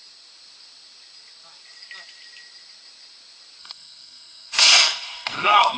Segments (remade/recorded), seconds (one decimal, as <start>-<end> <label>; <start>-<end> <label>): 0.0-3.6 recorded; 3.6-5.8 remade